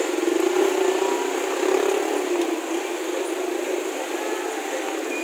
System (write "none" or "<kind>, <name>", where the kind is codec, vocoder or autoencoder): none